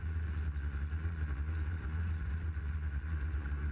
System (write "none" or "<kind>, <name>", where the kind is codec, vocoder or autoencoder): vocoder, Vocos